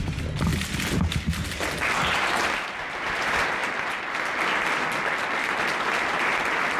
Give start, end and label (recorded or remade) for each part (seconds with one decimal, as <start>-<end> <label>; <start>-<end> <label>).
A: 0.0-6.8 recorded